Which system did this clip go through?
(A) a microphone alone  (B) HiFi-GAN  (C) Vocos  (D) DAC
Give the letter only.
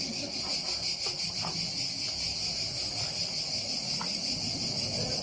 A